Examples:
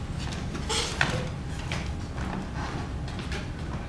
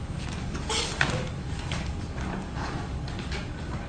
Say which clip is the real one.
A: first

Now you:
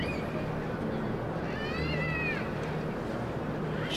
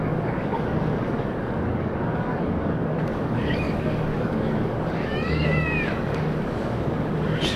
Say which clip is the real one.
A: first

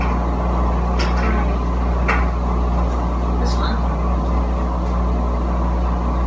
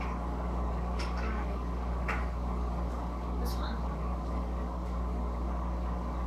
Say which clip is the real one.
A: first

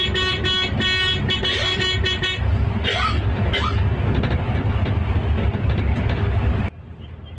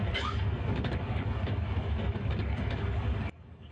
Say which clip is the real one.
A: first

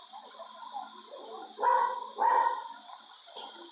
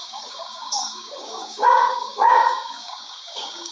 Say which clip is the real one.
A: first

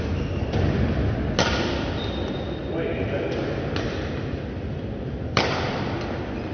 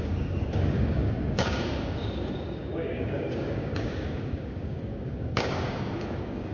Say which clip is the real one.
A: first